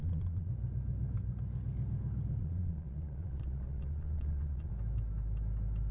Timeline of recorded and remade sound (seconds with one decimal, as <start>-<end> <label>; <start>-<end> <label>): 0.0-0.5 remade; 0.5-2.4 recorded; 2.4-4.7 remade; 4.7-5.9 recorded